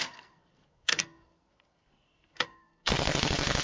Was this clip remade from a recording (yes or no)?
yes